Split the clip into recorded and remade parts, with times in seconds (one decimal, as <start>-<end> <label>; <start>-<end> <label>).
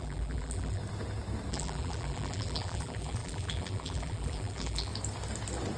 0.0-0.8 remade; 0.8-1.5 recorded; 1.5-4.9 remade; 4.9-5.8 recorded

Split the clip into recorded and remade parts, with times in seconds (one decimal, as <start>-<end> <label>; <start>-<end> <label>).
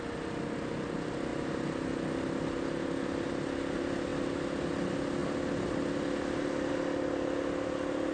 0.0-8.1 recorded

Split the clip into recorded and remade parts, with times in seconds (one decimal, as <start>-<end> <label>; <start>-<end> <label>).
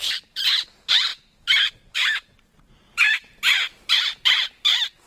0.0-5.1 remade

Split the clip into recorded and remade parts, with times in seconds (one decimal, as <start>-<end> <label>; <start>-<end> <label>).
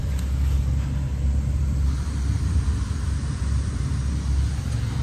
0.0-1.6 recorded; 1.6-3.8 remade; 3.8-5.0 recorded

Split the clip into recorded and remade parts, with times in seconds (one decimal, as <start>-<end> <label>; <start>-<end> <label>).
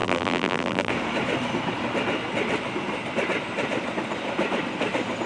0.0-0.9 remade; 0.9-5.3 recorded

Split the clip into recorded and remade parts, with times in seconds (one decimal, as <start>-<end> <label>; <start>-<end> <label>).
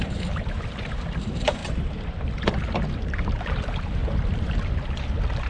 0.0-1.6 remade; 1.6-2.5 recorded; 2.5-4.0 remade; 4.0-5.5 recorded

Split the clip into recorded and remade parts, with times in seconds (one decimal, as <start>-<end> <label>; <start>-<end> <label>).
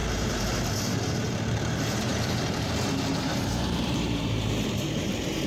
0.0-5.5 remade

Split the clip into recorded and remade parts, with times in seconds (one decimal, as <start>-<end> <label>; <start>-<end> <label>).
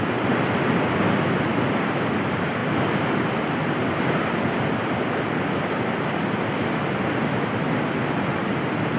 0.0-2.6 recorded; 2.6-3.3 remade; 3.3-9.0 recorded